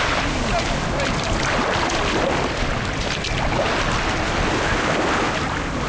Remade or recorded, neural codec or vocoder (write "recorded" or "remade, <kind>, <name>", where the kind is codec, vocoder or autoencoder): recorded